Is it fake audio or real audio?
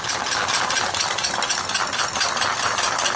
real